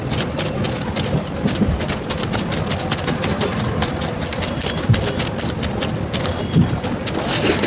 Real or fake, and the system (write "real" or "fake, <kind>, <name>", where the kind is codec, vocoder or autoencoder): real